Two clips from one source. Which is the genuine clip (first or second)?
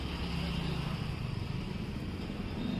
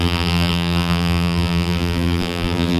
first